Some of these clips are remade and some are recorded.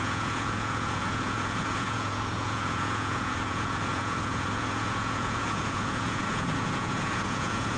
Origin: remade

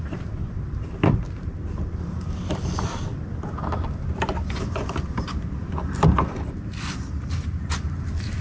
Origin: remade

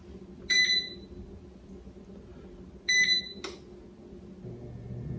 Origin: recorded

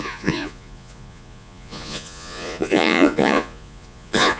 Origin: remade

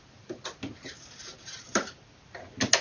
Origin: recorded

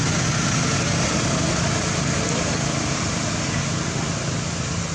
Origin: recorded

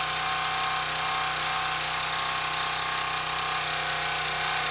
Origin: recorded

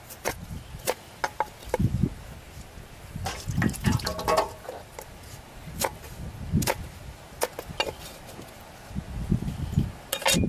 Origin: recorded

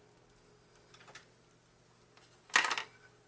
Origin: recorded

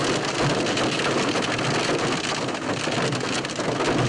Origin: recorded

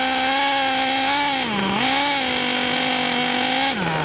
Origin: recorded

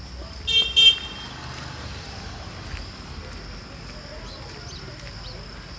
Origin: recorded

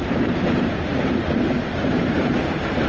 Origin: remade